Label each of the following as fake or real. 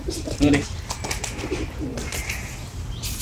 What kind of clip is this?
real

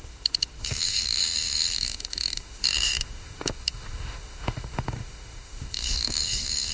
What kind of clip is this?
fake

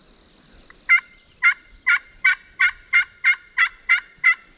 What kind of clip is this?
real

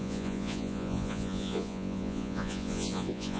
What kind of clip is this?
fake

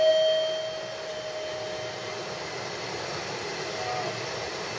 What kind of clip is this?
real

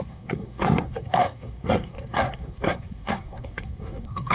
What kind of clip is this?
fake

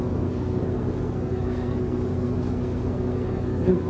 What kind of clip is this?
fake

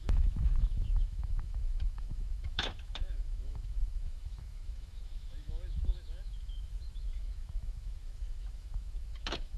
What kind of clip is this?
fake